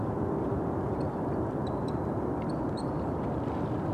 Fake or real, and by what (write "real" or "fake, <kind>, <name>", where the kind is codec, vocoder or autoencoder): fake, vocoder, BigVGAN v2